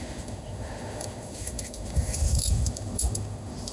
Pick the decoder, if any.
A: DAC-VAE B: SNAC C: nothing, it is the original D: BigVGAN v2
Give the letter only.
A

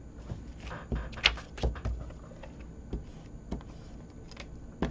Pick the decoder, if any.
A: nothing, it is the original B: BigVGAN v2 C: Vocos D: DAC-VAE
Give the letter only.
A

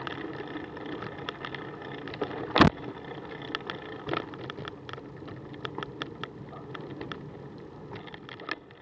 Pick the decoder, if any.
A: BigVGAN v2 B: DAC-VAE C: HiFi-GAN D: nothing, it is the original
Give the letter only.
D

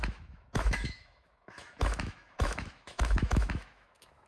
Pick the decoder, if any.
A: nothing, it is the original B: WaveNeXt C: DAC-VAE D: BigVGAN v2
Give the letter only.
C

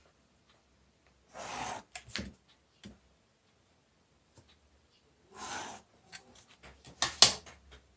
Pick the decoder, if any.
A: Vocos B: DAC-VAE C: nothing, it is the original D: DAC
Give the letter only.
C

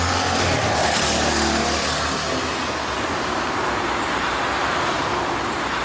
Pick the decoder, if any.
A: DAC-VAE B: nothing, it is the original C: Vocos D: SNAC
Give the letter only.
B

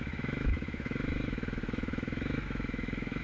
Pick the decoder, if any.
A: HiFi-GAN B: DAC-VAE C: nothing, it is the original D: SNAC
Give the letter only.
B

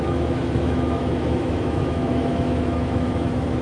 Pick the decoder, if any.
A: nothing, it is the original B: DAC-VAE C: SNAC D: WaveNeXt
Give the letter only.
B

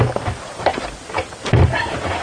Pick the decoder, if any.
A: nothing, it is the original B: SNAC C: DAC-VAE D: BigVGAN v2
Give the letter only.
A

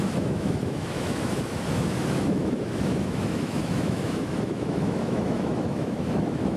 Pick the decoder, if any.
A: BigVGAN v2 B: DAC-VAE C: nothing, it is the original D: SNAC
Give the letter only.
B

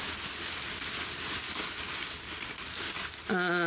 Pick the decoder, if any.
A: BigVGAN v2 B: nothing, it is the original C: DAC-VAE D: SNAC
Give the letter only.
B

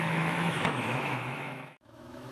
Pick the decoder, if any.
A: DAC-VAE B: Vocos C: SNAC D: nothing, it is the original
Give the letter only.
A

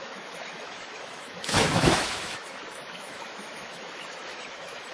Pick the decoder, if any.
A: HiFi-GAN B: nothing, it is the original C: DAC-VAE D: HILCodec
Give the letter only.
C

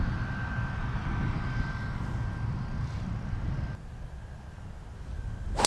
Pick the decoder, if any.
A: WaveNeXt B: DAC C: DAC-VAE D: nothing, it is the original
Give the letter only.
D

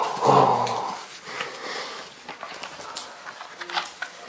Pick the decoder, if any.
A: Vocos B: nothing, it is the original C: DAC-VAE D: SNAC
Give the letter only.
B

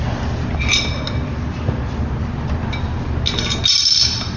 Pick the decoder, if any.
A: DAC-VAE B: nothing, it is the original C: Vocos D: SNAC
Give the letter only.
B